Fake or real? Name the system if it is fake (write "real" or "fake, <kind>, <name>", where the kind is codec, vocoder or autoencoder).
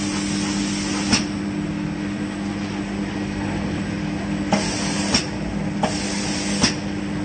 real